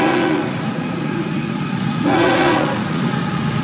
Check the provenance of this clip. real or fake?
fake